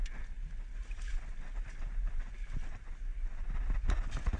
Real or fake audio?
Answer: real